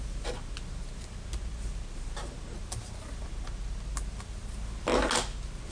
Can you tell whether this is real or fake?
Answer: real